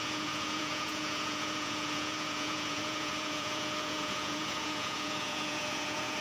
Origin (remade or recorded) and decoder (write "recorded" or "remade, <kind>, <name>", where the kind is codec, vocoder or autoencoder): remade, vocoder, Vocos